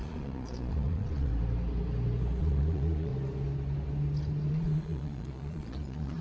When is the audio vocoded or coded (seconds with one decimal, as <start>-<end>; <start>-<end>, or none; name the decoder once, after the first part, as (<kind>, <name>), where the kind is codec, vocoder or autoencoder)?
0.0-1.3 (vocoder, Vocos); 2.4-3.1; 4.5-6.2